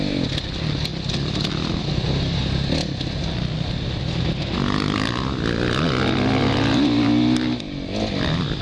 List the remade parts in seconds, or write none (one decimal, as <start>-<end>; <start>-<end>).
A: none